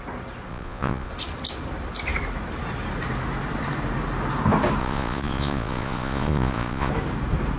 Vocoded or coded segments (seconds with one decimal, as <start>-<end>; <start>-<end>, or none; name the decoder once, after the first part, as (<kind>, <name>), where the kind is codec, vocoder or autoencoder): 0.5-1.1 (vocoder, Vocos); 4.8-6.9